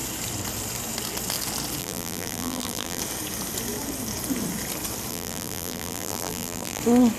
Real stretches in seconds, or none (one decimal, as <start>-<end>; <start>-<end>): 0.0-1.8; 3.0-5.1; 6.8-7.2